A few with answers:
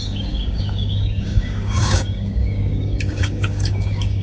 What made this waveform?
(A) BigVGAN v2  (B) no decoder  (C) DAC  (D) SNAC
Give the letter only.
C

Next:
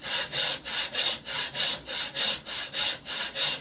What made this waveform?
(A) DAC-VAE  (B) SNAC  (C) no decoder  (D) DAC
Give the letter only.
C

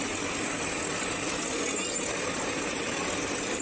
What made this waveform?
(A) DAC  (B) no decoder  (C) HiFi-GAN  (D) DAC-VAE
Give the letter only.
B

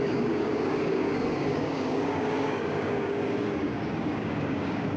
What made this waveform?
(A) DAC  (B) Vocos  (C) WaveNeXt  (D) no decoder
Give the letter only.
A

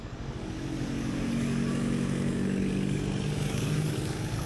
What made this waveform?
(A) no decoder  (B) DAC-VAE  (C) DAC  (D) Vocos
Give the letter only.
C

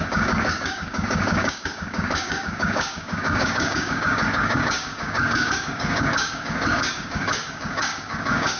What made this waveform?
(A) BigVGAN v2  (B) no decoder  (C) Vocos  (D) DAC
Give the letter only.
D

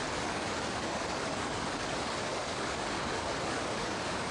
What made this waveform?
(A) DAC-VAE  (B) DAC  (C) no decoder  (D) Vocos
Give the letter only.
B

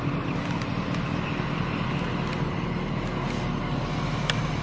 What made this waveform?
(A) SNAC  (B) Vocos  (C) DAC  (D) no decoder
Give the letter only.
D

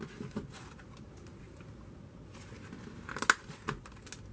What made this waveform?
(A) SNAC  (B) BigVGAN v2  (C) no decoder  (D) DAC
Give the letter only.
C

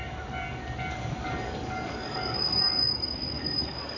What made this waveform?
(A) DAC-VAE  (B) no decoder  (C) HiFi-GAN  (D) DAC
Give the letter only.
D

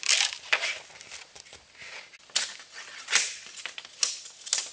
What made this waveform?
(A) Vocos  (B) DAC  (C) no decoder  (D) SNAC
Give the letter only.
C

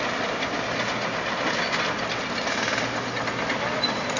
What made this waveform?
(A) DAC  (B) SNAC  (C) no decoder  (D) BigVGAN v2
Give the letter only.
C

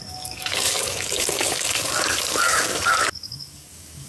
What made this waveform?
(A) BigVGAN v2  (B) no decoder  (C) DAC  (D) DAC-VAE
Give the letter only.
C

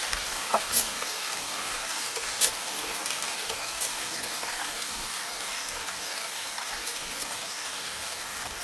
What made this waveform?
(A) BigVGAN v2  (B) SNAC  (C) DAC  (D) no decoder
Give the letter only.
C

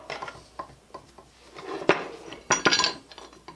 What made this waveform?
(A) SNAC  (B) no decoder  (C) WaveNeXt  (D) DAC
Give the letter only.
B